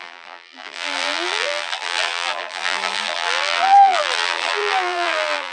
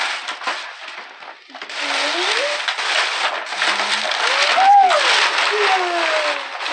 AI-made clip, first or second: first